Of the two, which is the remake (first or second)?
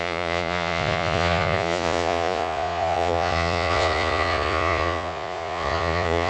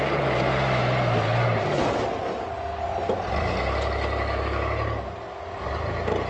first